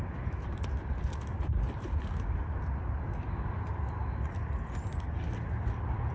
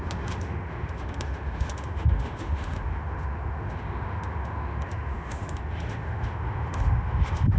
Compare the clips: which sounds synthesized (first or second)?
second